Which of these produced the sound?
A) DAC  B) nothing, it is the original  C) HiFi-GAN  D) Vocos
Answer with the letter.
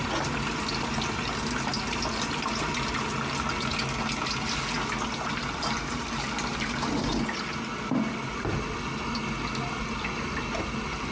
B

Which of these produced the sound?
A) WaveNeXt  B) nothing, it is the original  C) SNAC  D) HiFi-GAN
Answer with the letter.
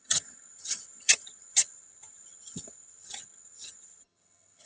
D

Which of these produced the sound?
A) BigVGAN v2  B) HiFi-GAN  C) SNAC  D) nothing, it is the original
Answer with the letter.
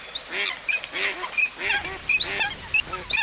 D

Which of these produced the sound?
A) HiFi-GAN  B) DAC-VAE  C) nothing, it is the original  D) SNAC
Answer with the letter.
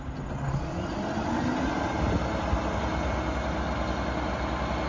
C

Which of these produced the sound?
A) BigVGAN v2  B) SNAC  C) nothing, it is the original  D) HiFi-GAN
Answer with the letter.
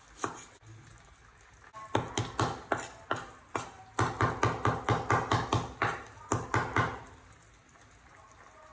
C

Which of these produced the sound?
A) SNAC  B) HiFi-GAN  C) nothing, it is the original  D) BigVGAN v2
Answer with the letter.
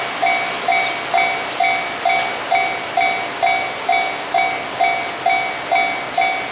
C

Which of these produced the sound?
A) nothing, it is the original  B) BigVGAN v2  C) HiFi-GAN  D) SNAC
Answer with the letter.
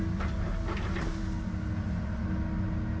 A